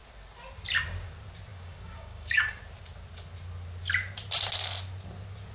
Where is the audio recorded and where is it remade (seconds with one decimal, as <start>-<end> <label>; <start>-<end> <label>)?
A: 0.0-1.5 recorded; 1.5-2.6 remade; 2.6-5.5 recorded